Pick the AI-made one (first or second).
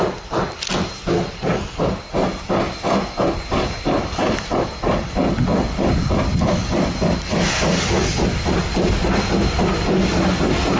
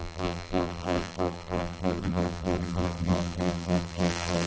second